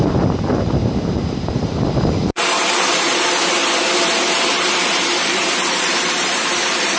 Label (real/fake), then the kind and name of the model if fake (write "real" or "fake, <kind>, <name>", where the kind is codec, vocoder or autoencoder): fake, vocoder, BigVGAN v2